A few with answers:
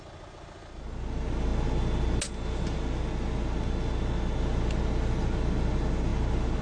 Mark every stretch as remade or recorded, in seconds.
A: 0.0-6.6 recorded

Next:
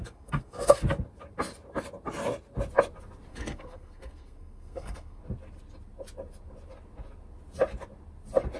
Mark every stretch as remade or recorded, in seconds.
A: 0.0-0.8 remade; 0.8-3.3 recorded; 3.3-5.2 remade; 5.2-8.6 recorded

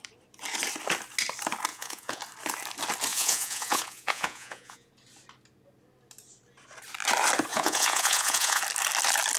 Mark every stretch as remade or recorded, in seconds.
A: 0.0-1.7 recorded; 1.7-2.2 remade; 2.2-3.1 recorded; 3.1-4.9 remade; 4.9-7.5 recorded; 7.5-8.6 remade; 8.6-9.4 recorded